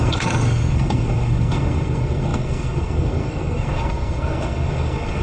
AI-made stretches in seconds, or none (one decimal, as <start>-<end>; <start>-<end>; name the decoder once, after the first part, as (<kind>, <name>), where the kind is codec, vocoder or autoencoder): 0.0-5.2 (codec, SNAC)